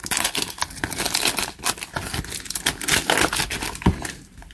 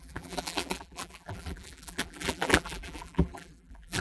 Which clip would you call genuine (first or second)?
first